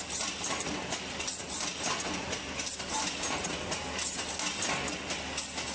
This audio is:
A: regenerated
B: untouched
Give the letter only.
B